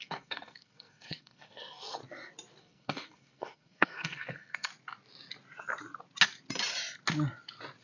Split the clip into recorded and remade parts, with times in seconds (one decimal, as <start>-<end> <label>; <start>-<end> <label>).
0.0-2.0 remade; 2.0-2.6 recorded; 2.6-4.7 remade; 4.7-7.8 recorded

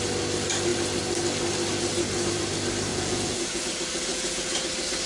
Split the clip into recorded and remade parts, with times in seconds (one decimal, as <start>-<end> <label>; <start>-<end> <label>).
0.0-2.9 recorded; 2.9-3.6 remade; 3.6-4.1 recorded; 4.1-4.6 remade; 4.6-5.1 recorded